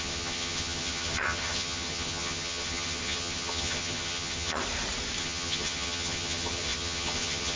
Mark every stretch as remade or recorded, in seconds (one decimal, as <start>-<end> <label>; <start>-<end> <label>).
0.0-4.6 remade; 4.6-5.2 recorded; 5.2-7.6 remade